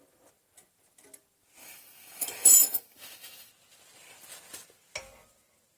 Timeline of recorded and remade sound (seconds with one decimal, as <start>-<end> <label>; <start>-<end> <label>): 0.0-1.6 recorded; 1.6-3.5 remade; 3.5-5.8 recorded